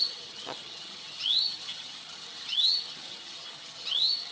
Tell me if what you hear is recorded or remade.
remade